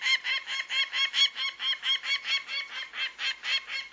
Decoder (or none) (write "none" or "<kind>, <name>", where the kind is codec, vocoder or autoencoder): none